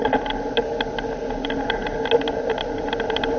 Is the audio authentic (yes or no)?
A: yes